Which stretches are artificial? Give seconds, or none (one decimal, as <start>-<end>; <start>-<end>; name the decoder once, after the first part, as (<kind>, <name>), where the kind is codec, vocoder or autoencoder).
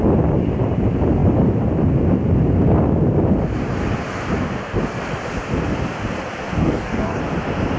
6.6-7.2 (codec, DAC)